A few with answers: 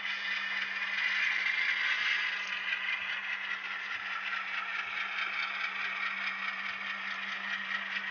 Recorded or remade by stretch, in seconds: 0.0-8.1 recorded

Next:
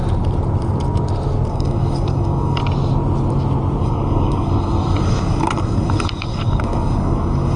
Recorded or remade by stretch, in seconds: 0.0-1.5 recorded; 1.5-2.6 remade; 2.6-3.8 recorded; 3.8-7.6 remade

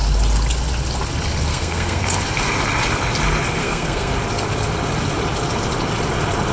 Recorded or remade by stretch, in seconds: 0.0-1.5 recorded; 1.5-2.0 remade; 2.0-3.6 recorded; 3.6-4.1 remade; 4.1-6.5 recorded

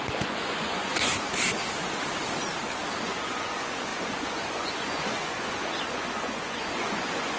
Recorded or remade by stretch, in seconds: 0.0-1.1 remade; 1.1-3.0 recorded; 3.0-7.4 remade

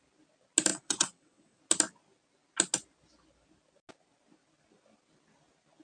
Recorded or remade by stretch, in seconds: 0.0-0.7 recorded; 0.7-1.6 remade; 1.6-5.8 recorded

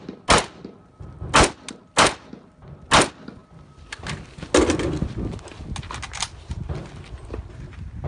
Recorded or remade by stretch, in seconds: 0.0-8.1 recorded